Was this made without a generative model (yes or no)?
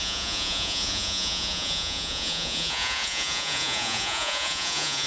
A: no